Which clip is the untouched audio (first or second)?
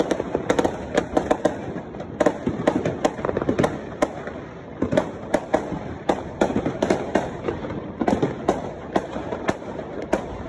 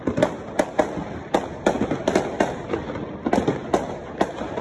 second